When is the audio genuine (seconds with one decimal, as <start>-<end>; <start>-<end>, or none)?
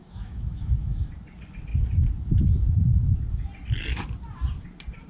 1.1-5.1